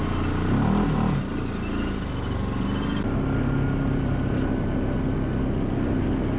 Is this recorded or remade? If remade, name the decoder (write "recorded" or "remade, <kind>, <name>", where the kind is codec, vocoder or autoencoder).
recorded